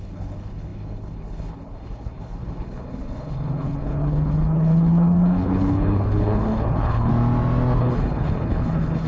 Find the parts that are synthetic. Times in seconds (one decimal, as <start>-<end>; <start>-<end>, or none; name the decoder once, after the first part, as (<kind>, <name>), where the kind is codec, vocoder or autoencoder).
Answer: 0.0-7.1 (codec, HILCodec); 7.8-9.1